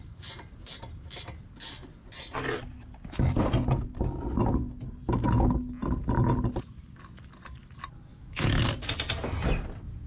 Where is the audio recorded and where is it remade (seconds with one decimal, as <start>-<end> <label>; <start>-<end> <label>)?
0.0-8.1 recorded; 8.1-8.6 remade; 8.6-10.1 recorded